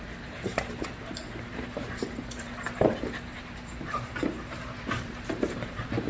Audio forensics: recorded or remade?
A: remade